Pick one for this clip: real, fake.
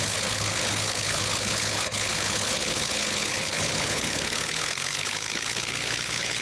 fake